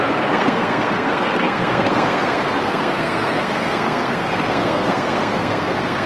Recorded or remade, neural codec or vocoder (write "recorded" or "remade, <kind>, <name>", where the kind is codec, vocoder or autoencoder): remade, codec, SNAC